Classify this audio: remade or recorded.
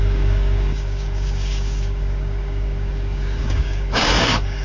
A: remade